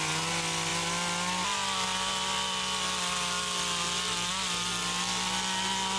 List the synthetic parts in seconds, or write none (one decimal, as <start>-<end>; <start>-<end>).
none